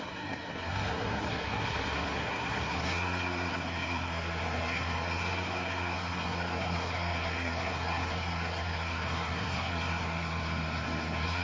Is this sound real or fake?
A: fake